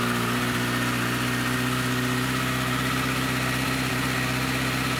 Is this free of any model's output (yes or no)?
yes